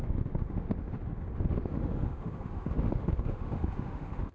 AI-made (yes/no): yes